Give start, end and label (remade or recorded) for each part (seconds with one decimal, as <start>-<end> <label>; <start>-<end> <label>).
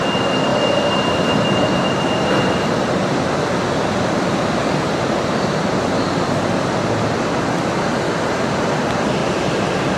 0.0-10.0 recorded